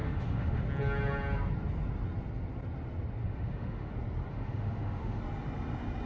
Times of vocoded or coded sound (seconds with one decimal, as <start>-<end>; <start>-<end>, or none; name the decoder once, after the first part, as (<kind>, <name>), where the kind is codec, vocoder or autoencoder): 0.0-0.7 (autoencoder, DAC-VAE); 3.2-3.9; 4.3-5.2